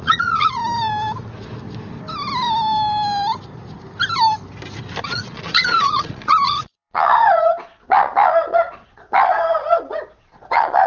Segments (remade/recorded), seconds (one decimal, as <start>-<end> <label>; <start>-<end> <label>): 0.0-0.6 remade; 0.6-5.0 recorded; 5.0-10.9 remade